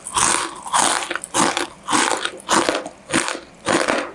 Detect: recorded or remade recorded